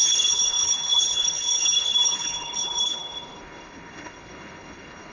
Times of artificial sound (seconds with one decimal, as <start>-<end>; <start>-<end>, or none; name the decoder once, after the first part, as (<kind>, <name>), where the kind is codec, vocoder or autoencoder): 0.0-5.1 (codec, HILCodec)